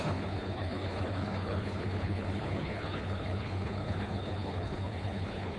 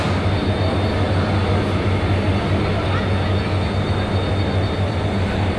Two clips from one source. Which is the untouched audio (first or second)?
second